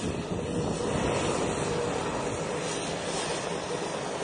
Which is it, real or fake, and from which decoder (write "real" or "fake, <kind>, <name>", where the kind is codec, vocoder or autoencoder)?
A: real